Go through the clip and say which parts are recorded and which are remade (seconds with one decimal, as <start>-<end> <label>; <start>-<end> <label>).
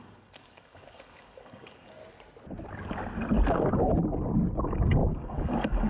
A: 0.0-2.0 remade; 2.0-3.5 recorded; 3.5-3.9 remade; 3.9-4.6 recorded; 4.6-5.9 remade